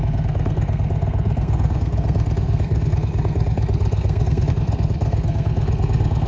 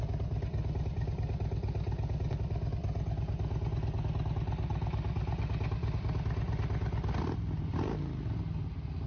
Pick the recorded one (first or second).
second